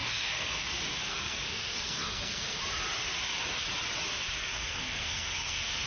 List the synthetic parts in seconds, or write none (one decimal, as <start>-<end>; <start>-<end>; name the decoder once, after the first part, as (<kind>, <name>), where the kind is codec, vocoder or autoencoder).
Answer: 0.0-0.7 (codec, SNAC); 1.1-2.6; 4.4-5.9